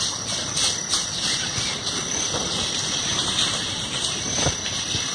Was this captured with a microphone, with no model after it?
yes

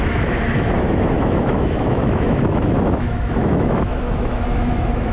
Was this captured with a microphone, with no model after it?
no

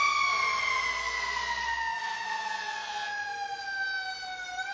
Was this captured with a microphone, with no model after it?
yes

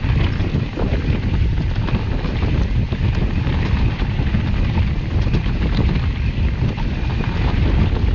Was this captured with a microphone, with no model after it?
yes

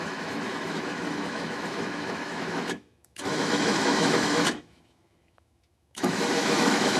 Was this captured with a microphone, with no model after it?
no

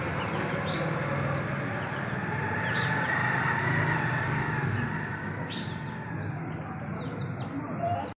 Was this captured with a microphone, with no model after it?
yes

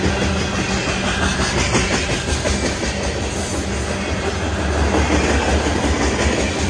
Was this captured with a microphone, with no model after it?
yes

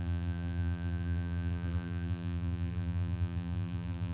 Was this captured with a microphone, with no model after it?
no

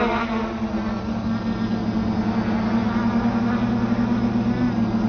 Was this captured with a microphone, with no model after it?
yes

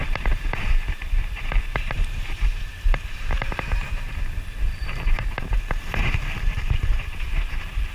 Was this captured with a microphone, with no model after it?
no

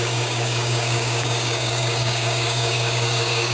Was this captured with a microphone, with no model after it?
no